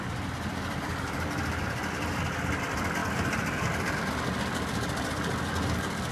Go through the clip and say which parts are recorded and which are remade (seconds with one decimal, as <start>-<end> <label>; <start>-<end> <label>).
0.0-6.1 recorded